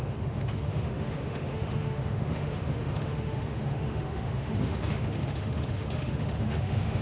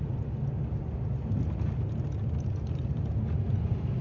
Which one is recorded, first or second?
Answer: second